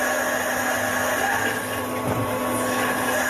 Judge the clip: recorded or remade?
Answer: recorded